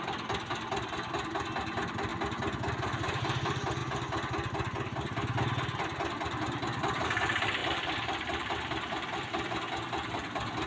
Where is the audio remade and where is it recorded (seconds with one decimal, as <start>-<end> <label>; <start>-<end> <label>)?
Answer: 0.0-2.1 remade; 2.1-2.7 recorded; 2.7-3.8 remade; 3.8-7.0 recorded; 7.0-10.7 remade